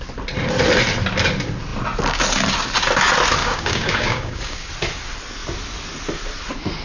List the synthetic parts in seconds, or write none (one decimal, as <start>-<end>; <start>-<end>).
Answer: 3.4-4.7